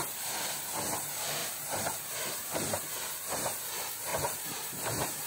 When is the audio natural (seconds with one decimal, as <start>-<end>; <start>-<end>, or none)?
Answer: 0.0-1.4; 3.0-4.1